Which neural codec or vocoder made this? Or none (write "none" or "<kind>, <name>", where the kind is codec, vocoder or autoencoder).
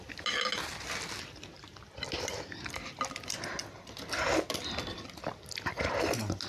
none